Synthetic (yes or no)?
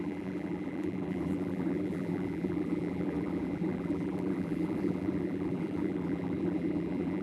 yes